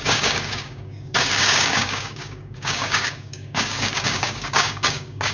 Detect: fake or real fake